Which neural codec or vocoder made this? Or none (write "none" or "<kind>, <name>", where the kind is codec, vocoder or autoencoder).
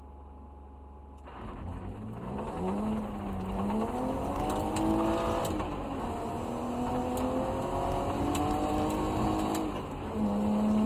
none